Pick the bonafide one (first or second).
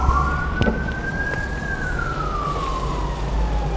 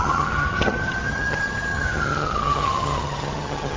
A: first